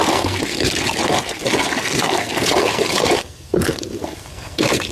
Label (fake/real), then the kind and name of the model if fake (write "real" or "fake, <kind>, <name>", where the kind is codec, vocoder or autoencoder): fake, codec, SNAC